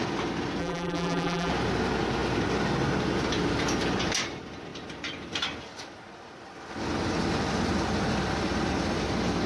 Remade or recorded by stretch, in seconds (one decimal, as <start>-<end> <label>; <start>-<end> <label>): 0.0-0.6 recorded; 0.6-1.5 remade; 1.5-9.5 recorded